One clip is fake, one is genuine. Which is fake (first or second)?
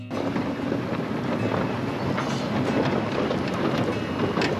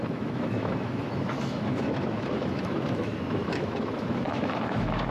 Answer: second